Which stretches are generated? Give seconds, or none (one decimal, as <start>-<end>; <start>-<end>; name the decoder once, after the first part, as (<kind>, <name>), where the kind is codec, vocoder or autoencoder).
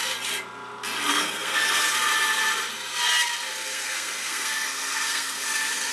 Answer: 1.1-2.1 (codec, SNAC); 3.5-5.9